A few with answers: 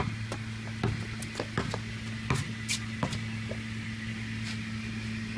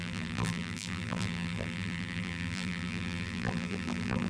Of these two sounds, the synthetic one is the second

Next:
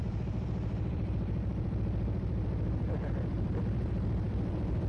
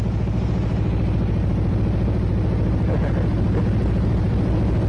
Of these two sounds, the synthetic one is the first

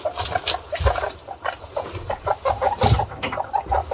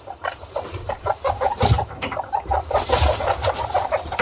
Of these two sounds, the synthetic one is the second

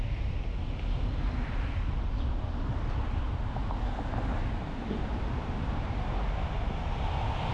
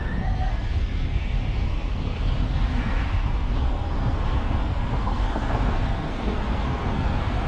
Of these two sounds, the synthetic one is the second